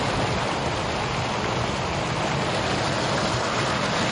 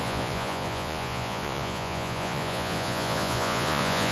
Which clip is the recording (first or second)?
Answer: first